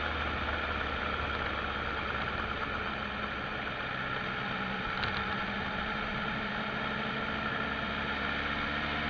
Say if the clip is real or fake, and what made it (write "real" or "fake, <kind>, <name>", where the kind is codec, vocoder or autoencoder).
real